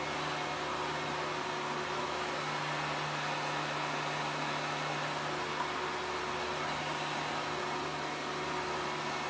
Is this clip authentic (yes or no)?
yes